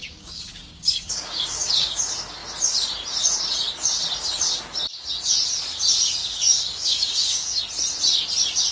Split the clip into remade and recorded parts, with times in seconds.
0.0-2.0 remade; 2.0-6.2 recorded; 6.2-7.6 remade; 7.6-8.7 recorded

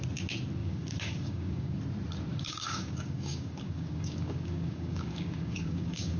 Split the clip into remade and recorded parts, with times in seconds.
0.0-0.6 recorded; 0.6-1.8 remade; 1.8-2.3 recorded; 2.3-6.2 remade

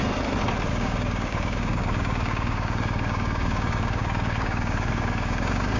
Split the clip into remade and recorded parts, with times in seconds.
0.0-0.7 recorded; 0.7-5.8 remade